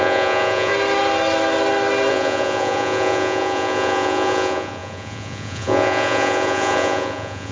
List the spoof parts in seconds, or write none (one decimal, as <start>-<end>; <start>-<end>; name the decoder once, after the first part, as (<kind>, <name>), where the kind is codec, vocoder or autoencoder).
0.0-0.7 (vocoder, Vocos); 2.1-7.5